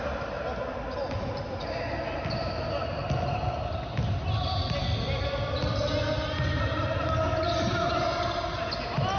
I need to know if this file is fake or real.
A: real